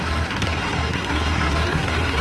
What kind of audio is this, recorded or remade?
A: remade